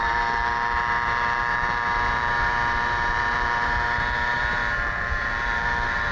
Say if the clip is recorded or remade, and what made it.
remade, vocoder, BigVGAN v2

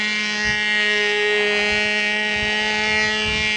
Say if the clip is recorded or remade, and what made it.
recorded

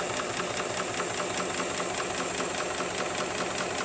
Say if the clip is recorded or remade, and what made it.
recorded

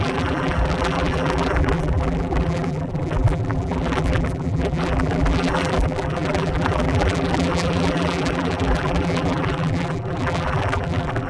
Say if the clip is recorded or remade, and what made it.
remade, vocoder, BigVGAN v2